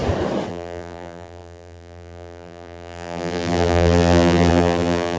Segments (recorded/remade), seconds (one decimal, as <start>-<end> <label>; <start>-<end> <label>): 0.0-0.5 recorded; 0.5-5.2 remade